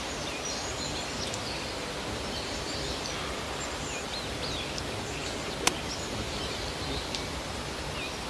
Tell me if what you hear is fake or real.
real